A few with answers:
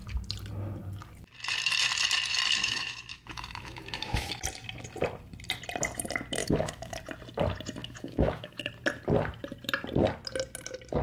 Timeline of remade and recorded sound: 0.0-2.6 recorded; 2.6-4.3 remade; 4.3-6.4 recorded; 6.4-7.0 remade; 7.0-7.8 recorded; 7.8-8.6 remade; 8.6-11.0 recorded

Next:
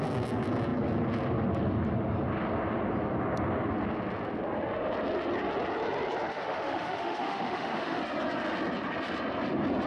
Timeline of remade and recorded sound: 0.0-6.3 recorded; 6.3-8.0 remade; 8.0-9.9 recorded

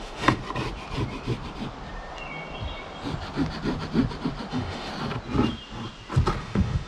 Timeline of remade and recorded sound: 0.0-0.4 remade; 0.4-4.5 recorded; 4.5-4.9 remade; 4.9-6.4 recorded; 6.4-6.9 remade